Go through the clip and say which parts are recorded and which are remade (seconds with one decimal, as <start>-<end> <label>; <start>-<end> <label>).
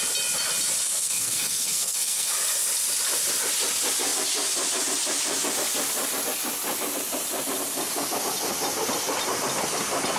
0.0-0.8 recorded; 0.8-2.3 remade; 2.3-10.2 recorded